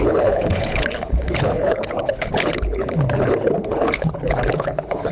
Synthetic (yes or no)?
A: yes